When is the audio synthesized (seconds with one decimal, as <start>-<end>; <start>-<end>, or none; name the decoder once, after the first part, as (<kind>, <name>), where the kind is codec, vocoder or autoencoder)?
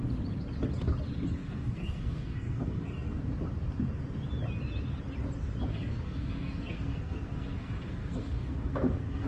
1.4-3.2 (codec, SNAC); 5.7-9.3